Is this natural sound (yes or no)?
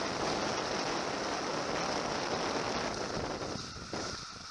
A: yes